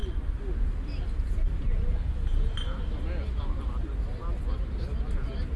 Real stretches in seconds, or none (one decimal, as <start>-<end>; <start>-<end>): 0.0-5.6